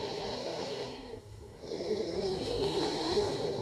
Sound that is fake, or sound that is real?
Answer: fake